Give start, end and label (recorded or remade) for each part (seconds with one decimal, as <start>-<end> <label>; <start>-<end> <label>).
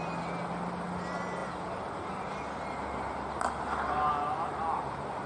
0.0-5.3 recorded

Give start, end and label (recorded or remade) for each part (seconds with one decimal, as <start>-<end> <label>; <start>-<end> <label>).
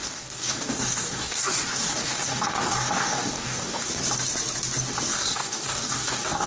0.0-3.9 remade; 3.9-5.1 recorded; 5.1-6.5 remade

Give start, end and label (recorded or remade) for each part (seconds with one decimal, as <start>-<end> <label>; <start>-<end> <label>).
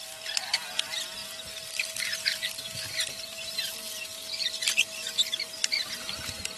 0.0-1.2 recorded; 1.2-5.2 remade; 5.2-6.6 recorded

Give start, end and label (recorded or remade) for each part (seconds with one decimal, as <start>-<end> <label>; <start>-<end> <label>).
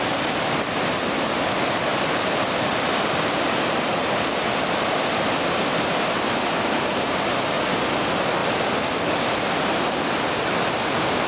0.0-1.9 recorded; 1.9-6.2 remade; 6.2-8.4 recorded; 8.4-9.1 remade; 9.1-11.3 recorded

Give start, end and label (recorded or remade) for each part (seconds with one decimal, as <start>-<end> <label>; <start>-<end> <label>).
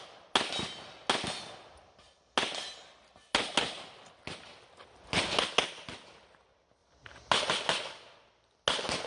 0.0-9.1 recorded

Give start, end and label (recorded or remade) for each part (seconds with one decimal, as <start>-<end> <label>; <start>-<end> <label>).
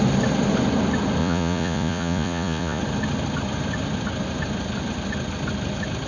0.0-1.2 recorded; 1.2-2.8 remade; 2.8-6.1 recorded